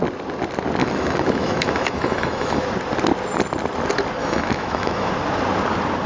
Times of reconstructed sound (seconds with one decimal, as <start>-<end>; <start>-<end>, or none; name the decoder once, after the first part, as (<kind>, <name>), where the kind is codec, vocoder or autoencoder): 0.8-2.6 (autoencoder, DAC-VAE); 4.2-5.1